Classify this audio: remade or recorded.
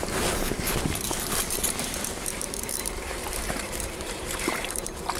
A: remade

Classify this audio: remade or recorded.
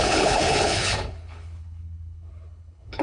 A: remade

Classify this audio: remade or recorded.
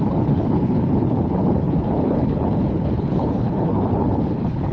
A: remade